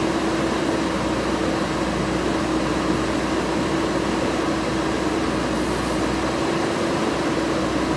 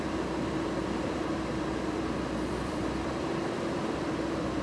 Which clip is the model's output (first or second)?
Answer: second